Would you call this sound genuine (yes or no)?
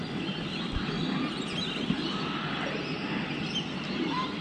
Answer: yes